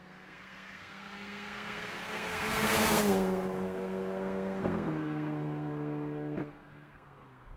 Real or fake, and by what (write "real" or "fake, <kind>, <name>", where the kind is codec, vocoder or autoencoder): fake, codec, SNAC